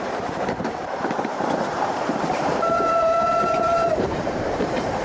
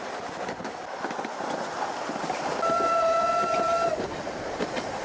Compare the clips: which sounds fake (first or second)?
first